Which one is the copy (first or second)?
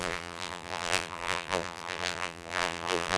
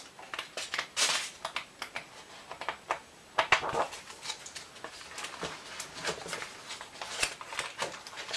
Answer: first